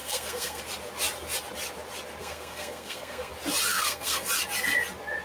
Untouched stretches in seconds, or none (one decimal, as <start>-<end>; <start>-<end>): 0.6-2.2; 3.3-3.7; 4.3-5.2